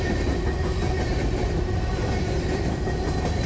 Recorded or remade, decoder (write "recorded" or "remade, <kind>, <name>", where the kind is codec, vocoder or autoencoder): recorded